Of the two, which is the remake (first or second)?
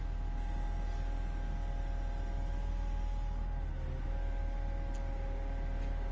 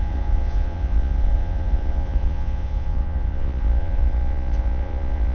second